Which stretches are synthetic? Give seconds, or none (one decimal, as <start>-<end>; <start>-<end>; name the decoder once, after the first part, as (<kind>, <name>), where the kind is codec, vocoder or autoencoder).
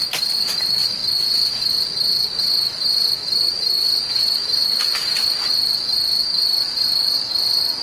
0.0-1.0 (vocoder, BigVGAN v2); 2.4-5.6; 6.3-7.8